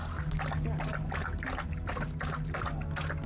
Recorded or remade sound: recorded